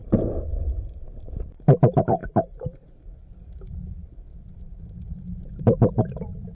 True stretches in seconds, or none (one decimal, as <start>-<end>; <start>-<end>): none